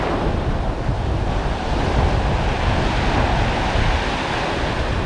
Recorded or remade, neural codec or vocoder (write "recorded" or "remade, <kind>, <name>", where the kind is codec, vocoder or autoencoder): recorded